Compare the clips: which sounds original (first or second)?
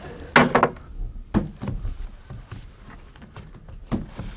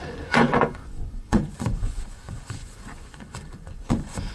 first